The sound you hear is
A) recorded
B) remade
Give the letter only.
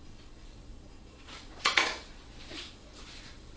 B